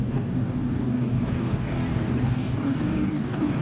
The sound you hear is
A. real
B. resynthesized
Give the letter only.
B